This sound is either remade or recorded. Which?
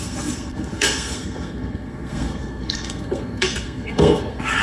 remade